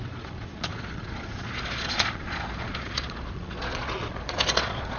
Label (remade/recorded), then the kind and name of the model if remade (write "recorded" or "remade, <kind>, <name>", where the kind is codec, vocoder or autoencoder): remade, vocoder, Vocos